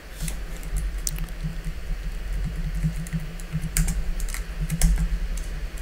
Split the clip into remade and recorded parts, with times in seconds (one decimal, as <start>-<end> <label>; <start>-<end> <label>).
0.0-1.5 recorded; 1.5-4.3 remade; 4.3-5.8 recorded